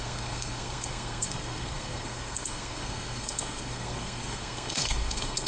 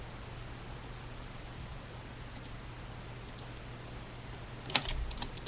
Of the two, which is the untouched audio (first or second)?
second